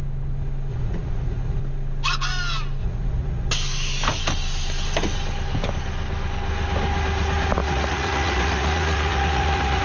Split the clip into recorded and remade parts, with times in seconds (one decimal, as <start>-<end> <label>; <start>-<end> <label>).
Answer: 0.0-0.7 recorded; 0.7-1.6 remade; 1.6-2.8 recorded; 2.8-3.5 remade; 3.5-7.6 recorded; 7.6-9.8 remade